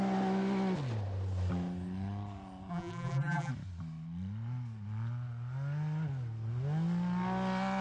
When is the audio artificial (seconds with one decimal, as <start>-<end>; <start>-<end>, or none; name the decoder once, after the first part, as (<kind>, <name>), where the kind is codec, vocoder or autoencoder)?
2.7-3.5 (vocoder, BigVGAN v2)